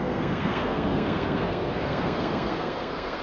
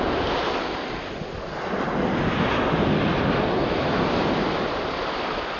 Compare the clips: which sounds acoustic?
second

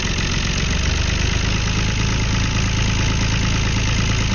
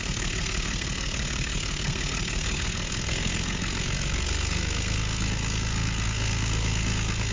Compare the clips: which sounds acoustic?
first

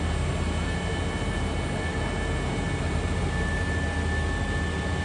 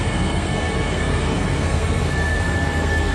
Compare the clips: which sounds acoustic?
first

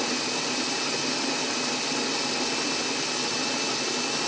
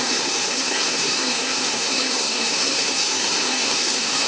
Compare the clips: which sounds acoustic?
first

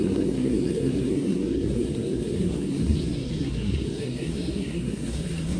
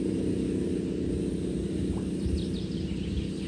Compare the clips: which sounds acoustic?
second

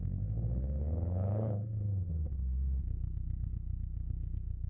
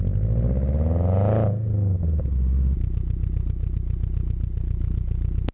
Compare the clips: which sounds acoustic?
second